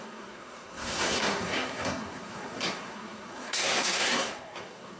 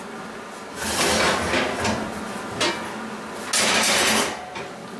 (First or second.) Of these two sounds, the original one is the second